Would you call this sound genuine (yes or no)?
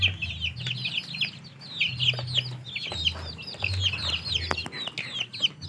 yes